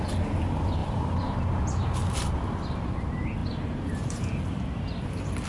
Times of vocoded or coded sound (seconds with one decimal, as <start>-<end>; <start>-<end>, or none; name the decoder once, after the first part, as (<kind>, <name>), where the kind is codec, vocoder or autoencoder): 0.8-1.4 (vocoder, BigVGAN v2); 3.4-4.4